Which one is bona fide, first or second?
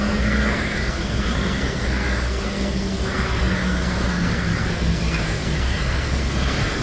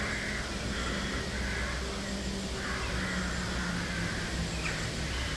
second